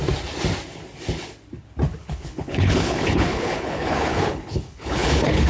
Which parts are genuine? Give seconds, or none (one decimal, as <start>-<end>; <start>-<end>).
0.0-1.9